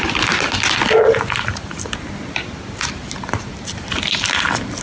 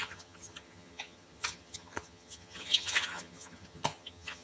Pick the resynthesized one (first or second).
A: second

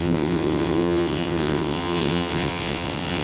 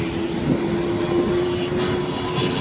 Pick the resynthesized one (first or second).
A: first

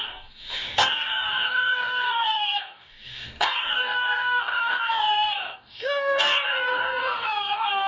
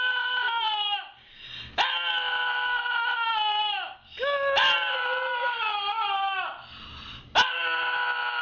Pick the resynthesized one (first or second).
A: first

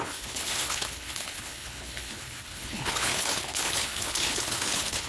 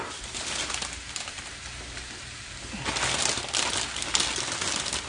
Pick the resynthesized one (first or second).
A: first